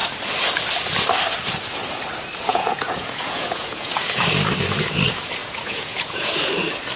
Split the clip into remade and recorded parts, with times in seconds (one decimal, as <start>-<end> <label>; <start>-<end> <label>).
0.0-2.5 recorded; 2.5-4.2 remade; 4.2-5.4 recorded; 5.4-6.3 remade; 6.3-7.0 recorded